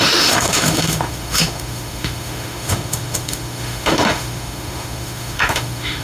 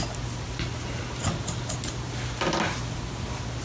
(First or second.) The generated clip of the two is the first